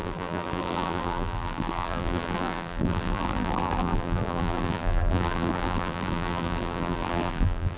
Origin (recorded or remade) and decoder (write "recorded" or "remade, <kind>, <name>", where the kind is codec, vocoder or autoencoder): remade, vocoder, BigVGAN v2